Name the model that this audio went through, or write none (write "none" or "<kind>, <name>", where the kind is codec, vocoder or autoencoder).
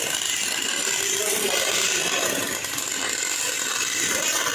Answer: none